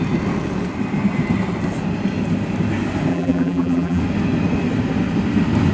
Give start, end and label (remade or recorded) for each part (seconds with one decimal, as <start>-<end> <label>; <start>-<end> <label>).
0.0-3.1 recorded; 3.1-4.0 remade; 4.0-5.7 recorded